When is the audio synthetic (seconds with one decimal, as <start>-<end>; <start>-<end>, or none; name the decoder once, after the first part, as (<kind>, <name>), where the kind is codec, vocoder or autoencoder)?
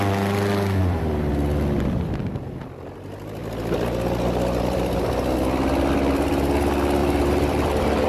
0.8-1.3 (vocoder, BigVGAN v2); 7.0-8.1